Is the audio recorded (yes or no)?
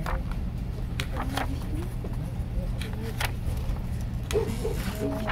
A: yes